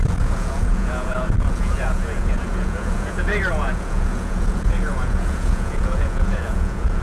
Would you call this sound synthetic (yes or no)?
yes